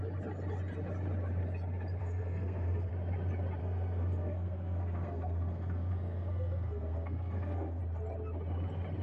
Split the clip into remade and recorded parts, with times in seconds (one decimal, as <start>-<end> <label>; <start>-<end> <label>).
0.0-2.0 recorded; 2.0-2.9 remade; 2.9-3.6 recorded; 3.6-7.8 remade; 7.8-9.0 recorded